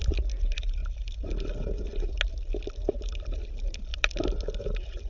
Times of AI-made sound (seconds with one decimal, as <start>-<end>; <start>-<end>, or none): 0.8-1.5; 3.9-4.6